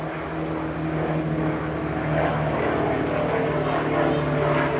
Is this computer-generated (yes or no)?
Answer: no